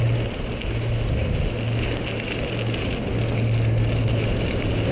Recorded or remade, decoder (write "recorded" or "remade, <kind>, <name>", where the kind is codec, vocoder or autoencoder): recorded